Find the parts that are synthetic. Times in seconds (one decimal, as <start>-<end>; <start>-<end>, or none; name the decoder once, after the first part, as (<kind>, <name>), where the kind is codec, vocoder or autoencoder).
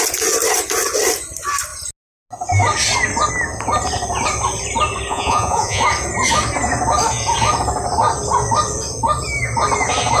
5.1-5.8 (vocoder, Vocos)